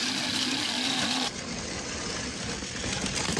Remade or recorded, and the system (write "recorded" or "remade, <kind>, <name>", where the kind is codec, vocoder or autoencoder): recorded